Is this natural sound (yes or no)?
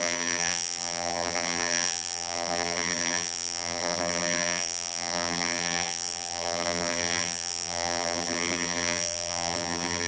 no